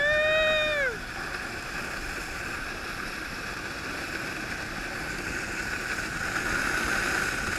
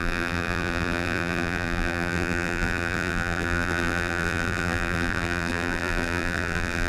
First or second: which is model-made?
second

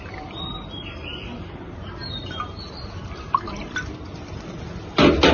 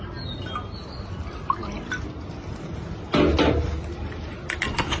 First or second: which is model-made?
first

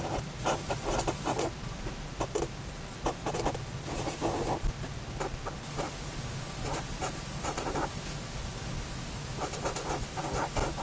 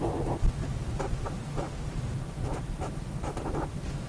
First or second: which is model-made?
second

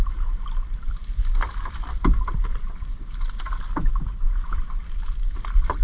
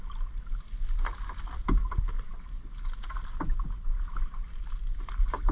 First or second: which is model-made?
first